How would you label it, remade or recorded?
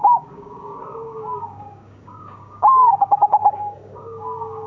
remade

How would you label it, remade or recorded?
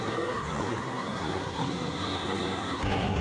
remade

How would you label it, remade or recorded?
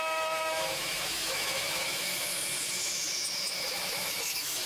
remade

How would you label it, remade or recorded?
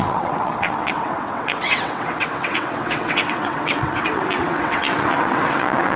remade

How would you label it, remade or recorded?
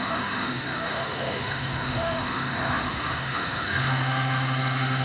remade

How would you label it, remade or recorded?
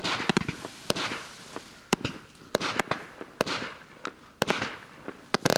recorded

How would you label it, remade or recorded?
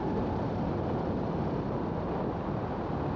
recorded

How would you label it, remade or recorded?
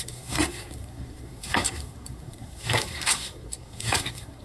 remade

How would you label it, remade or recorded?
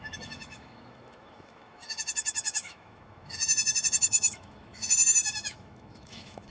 remade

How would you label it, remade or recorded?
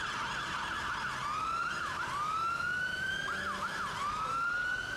recorded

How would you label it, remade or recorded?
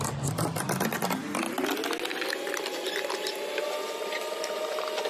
recorded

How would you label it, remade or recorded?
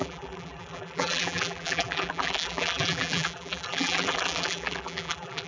remade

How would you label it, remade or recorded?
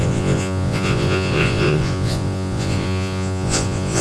remade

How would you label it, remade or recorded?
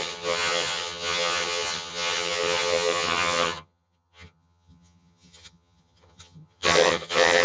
remade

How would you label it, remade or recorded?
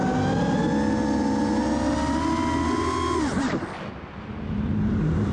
recorded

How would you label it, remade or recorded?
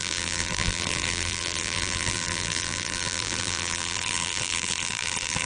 remade